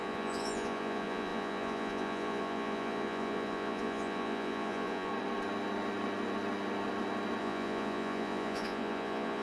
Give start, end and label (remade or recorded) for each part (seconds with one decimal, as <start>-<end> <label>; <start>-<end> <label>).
0.0-5.1 remade; 5.1-7.4 recorded; 7.4-9.4 remade